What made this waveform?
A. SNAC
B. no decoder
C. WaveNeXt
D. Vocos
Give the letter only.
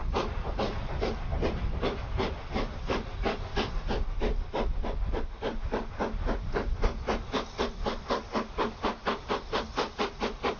B